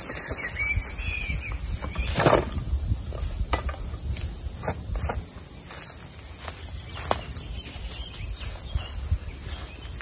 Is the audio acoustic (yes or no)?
yes